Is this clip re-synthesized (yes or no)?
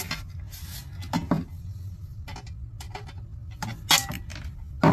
no